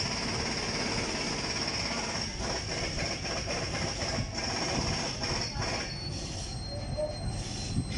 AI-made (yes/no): no